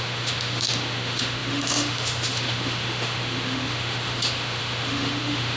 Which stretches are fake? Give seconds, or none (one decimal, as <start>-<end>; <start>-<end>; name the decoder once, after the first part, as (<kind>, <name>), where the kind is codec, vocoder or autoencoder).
0.0-5.6 (autoencoder, DAC-VAE)

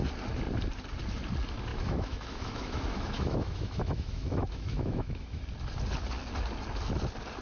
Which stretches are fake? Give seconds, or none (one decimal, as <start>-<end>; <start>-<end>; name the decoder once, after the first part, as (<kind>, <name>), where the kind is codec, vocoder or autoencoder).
1.7-5.4 (autoencoder, DAC-VAE)

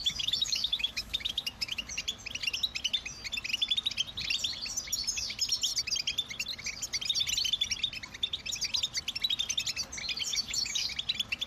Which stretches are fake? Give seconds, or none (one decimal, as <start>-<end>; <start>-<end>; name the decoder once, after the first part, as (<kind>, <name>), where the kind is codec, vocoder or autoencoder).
0.0-1.9 (autoencoder, DAC-VAE); 10.3-10.9

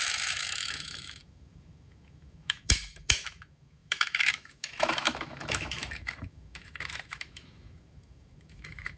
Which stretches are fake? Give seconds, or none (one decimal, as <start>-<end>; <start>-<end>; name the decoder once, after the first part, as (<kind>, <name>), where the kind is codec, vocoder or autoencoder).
0.0-9.0 (autoencoder, DAC-VAE)

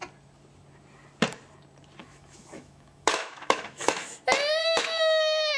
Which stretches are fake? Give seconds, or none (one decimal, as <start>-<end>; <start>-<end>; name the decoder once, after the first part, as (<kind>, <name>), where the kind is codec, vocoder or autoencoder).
2.0-4.1 (autoencoder, DAC-VAE); 4.6-5.6